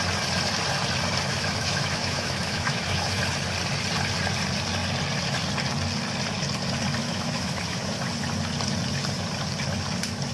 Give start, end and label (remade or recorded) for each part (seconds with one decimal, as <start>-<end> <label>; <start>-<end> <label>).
0.0-1.3 recorded; 1.3-3.2 remade; 3.2-7.0 recorded; 7.0-7.8 remade; 7.8-10.3 recorded